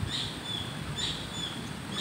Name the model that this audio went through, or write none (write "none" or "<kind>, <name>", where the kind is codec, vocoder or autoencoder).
none